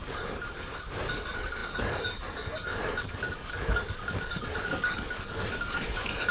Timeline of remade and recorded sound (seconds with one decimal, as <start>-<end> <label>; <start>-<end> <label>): 0.0-6.3 remade